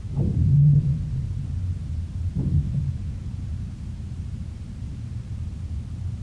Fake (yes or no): yes